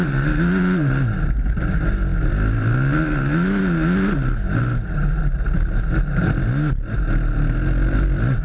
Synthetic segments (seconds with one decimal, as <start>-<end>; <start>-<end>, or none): none